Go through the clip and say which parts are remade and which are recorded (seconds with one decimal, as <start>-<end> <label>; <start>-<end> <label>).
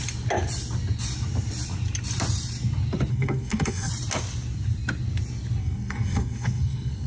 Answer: 0.0-3.1 recorded; 3.1-3.9 remade; 3.9-5.6 recorded; 5.6-7.1 remade